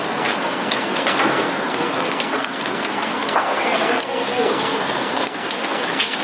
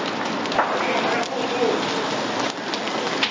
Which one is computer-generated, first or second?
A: first